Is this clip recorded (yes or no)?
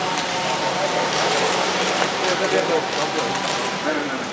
no